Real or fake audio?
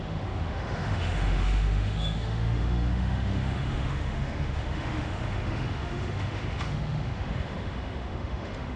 fake